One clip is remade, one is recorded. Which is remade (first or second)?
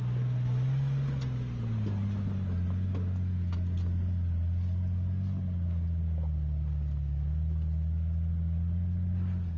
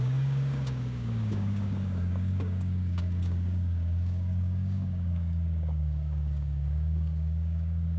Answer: second